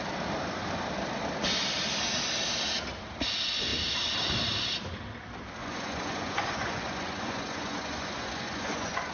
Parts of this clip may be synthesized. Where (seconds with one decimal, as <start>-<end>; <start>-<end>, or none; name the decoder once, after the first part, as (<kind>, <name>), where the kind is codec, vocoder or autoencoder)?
5.6-9.1 (vocoder, Vocos)